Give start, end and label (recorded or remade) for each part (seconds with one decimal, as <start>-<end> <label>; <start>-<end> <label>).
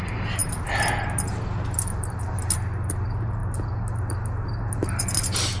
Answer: 0.0-5.6 recorded